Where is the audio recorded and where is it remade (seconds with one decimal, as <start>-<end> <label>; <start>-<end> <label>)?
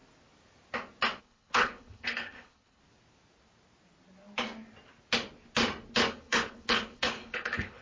0.0-1.2 recorded; 1.2-2.8 remade; 2.8-6.1 recorded; 6.1-7.8 remade